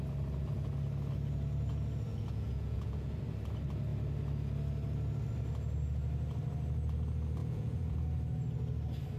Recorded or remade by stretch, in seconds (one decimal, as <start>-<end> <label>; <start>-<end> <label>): 0.0-2.1 recorded; 2.1-3.1 remade; 3.1-7.4 recorded; 7.4-8.0 remade; 8.0-9.2 recorded